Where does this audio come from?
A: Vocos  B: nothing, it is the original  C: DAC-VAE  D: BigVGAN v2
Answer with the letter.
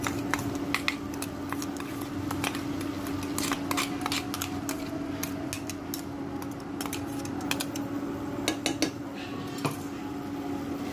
B